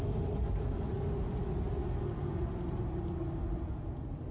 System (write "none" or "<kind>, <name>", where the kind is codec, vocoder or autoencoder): none